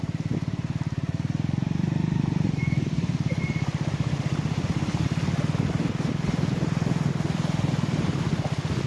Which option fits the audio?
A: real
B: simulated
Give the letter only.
B